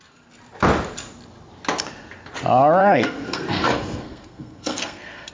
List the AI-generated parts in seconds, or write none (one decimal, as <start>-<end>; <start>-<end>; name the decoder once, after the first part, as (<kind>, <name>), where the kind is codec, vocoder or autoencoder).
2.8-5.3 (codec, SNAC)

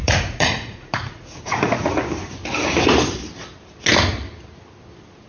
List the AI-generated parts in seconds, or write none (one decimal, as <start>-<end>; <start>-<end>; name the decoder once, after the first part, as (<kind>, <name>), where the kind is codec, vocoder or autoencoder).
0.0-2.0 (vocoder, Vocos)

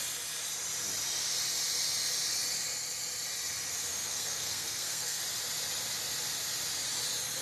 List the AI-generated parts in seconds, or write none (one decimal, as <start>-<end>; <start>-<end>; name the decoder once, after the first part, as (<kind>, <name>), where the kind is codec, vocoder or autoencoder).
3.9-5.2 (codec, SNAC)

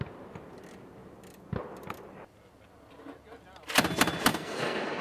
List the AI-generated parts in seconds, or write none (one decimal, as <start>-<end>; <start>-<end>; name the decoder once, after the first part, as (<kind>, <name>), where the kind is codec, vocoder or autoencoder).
4.3-5.0 (codec, SNAC)

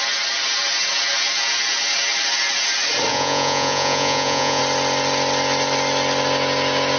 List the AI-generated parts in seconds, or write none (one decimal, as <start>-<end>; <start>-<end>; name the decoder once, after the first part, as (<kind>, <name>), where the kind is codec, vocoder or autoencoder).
3.1-4.6 (vocoder, Vocos)

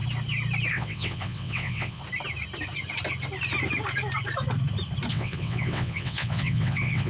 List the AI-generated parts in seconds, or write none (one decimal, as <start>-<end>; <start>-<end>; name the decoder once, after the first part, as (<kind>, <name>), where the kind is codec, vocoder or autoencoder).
0.7-2.0 (vocoder, WaveNeXt); 5.1-7.1